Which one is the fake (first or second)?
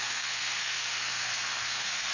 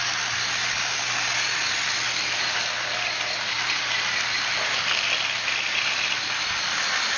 first